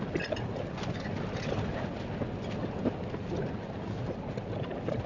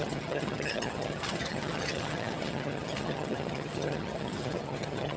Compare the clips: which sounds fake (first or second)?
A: second